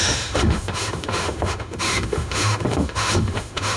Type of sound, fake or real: fake